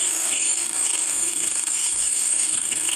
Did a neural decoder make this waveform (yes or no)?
yes